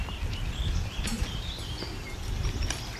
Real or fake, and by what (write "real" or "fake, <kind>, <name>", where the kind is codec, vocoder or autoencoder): real